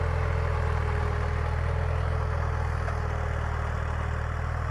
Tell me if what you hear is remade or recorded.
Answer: recorded